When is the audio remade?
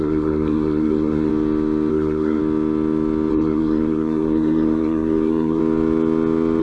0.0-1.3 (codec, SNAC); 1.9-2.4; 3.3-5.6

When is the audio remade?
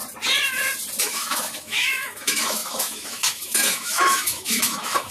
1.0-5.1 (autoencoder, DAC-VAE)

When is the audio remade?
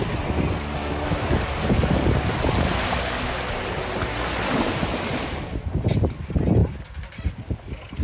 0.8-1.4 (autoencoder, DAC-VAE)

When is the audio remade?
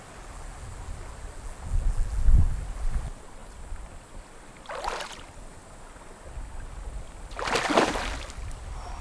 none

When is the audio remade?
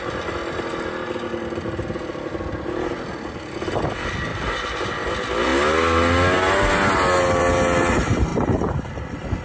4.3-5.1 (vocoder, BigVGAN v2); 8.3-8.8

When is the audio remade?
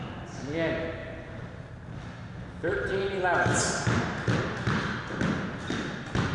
none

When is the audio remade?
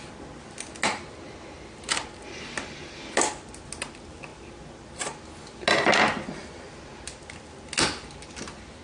none